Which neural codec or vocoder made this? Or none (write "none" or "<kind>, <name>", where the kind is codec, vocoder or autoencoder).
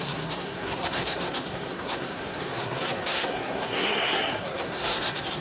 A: codec, SNAC